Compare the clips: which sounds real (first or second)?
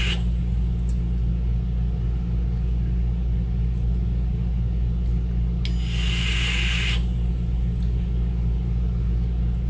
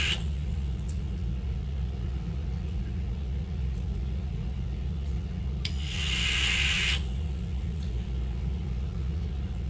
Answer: first